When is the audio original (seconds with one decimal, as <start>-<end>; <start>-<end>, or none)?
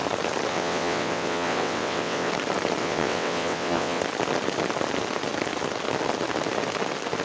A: 0.0-0.5; 2.3-2.8; 4.0-7.2